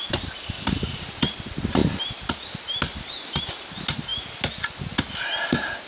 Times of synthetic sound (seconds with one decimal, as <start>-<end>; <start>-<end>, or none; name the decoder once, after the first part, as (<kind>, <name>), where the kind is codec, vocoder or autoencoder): none